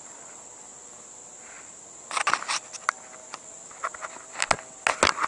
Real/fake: real